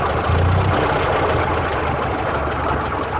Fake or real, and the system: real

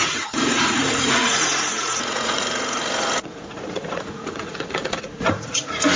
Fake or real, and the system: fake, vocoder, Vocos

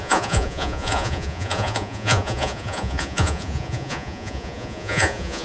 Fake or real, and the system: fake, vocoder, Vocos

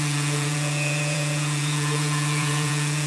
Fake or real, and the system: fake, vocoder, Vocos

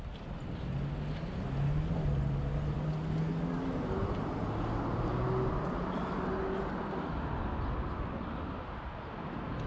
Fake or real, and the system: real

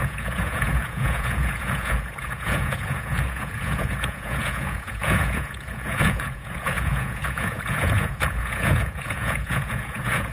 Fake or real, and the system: fake, vocoder, Vocos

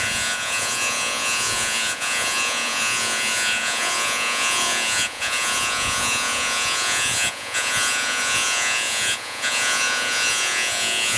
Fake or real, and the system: fake, vocoder, Vocos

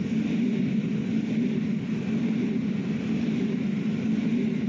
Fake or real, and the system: real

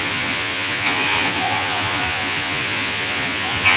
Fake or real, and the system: fake, vocoder, Vocos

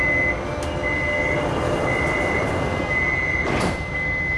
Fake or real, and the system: real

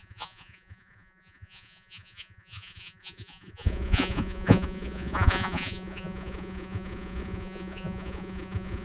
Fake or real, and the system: fake, vocoder, Vocos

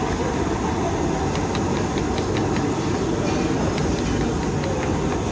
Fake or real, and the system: real